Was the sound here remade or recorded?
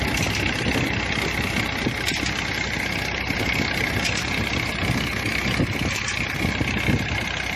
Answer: recorded